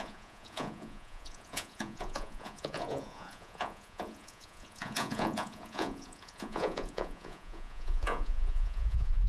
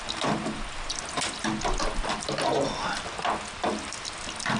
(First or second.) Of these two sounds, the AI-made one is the first